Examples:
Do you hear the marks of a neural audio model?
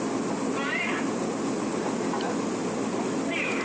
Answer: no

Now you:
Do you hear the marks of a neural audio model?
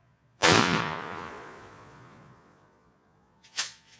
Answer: yes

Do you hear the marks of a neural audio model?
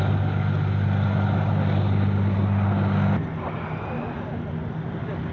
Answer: no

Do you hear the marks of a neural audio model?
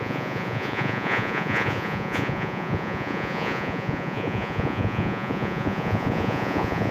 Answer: yes